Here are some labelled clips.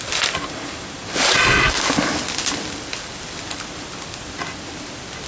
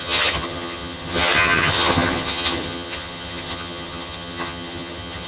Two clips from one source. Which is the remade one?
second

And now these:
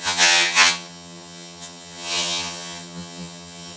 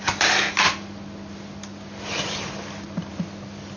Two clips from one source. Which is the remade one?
first